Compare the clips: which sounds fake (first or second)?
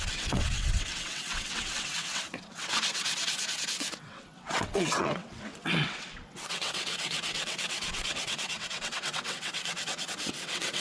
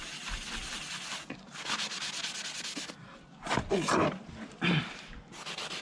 first